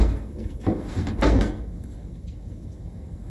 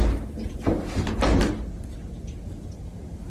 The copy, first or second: first